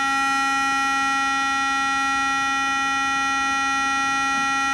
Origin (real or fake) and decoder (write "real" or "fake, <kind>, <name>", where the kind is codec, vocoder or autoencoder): real